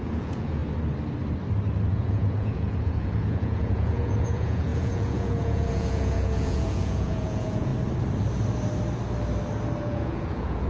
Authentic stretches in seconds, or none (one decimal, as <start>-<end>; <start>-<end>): 0.6-1.9; 7.7-9.8